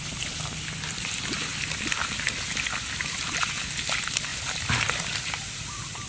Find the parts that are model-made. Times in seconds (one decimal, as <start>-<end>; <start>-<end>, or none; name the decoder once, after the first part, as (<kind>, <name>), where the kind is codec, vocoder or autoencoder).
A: none